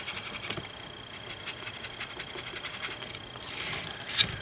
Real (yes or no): yes